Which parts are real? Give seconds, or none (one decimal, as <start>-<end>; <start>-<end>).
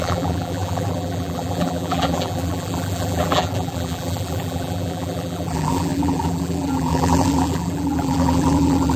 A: none